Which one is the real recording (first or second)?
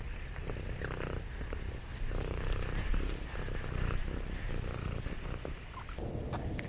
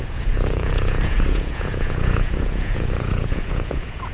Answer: first